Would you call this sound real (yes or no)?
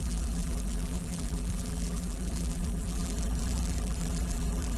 no